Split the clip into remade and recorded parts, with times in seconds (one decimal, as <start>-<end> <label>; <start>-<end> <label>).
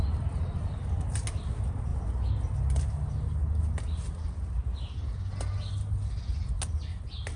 0.0-7.4 recorded